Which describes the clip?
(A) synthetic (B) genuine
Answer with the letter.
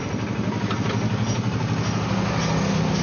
B